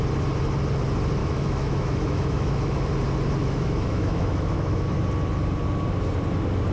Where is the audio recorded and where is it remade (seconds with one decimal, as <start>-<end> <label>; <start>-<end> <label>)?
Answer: 0.0-1.2 recorded; 1.2-2.9 remade; 2.9-3.4 recorded; 3.4-5.0 remade; 5.0-6.7 recorded